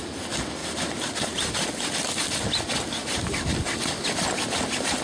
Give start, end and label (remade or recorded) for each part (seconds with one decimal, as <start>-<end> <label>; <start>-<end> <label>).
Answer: 0.0-5.0 recorded

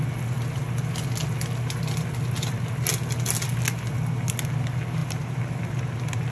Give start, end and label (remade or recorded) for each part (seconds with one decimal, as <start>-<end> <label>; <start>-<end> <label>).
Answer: 0.0-5.0 recorded; 5.0-5.8 remade; 5.8-6.3 recorded

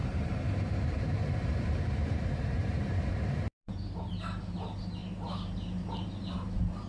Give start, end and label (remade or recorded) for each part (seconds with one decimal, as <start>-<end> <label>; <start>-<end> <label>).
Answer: 0.0-4.1 remade; 4.1-5.0 recorded; 5.0-6.9 remade

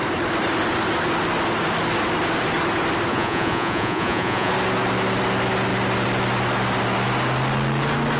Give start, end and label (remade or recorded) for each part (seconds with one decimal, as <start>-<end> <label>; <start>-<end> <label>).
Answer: 0.0-3.1 recorded; 3.1-4.5 remade; 4.5-8.2 recorded

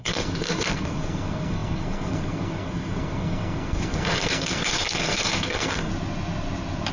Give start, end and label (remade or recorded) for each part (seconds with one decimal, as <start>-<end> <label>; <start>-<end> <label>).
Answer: 0.0-5.9 remade; 5.9-6.9 recorded

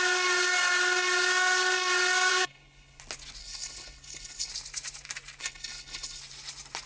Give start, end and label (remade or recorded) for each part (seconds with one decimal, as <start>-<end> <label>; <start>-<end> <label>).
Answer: 0.0-2.3 recorded; 2.3-3.0 remade; 3.0-3.4 recorded; 3.4-4.5 remade; 4.5-5.4 recorded; 5.4-6.2 remade; 6.2-6.9 recorded

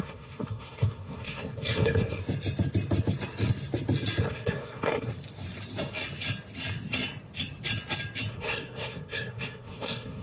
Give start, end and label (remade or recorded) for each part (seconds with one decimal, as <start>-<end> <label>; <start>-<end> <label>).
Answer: 0.0-2.2 remade; 2.2-4.2 recorded; 4.2-5.1 remade; 5.1-8.3 recorded; 8.3-10.2 remade